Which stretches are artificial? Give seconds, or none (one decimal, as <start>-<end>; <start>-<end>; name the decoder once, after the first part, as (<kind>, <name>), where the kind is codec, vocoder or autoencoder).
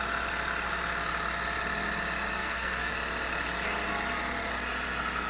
2.3-2.9 (codec, SNAC)